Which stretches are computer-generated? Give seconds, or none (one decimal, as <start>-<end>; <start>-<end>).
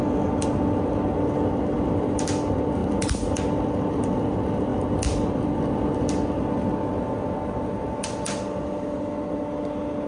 none